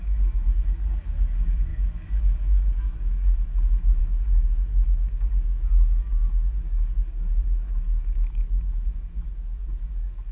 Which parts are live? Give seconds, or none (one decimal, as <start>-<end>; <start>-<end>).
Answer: none